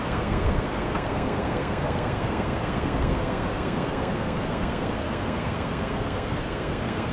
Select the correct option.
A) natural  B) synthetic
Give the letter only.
B